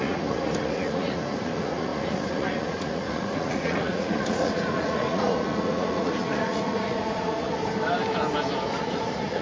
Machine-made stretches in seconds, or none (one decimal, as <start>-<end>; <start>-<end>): 0.0-7.6; 8.8-9.4